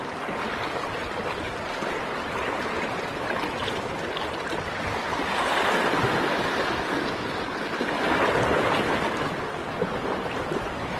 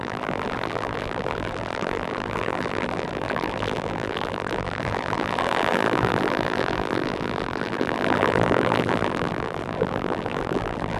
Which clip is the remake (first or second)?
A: second